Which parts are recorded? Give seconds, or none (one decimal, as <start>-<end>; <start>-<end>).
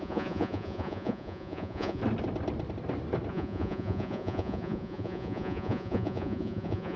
2.0-3.3